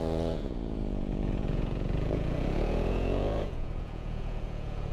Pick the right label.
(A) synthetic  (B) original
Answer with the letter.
A